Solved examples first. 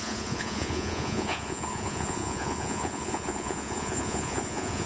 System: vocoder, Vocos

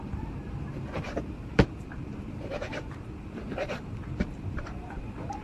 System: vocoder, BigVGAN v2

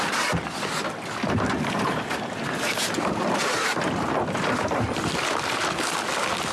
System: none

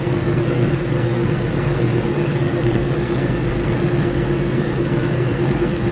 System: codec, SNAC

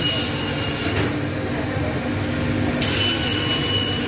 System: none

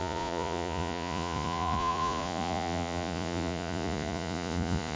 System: vocoder, Vocos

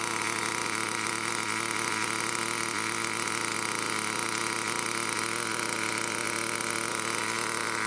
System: none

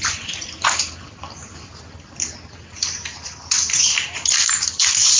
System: none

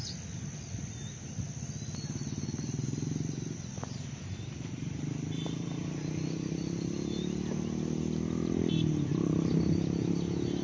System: none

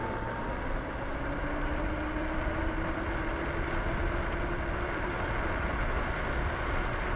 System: none